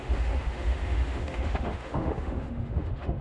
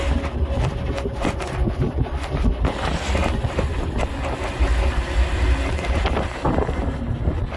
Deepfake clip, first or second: first